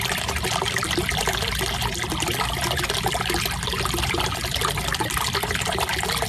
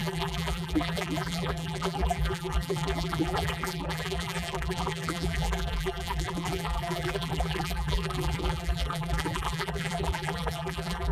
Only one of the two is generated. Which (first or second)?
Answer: second